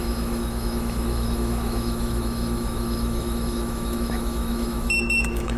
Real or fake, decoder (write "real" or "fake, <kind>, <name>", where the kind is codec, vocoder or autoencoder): fake, autoencoder, DAC-VAE